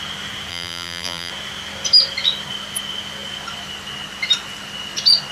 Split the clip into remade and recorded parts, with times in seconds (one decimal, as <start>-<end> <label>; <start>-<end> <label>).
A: 0.0-0.5 recorded; 0.5-1.3 remade; 1.3-5.3 recorded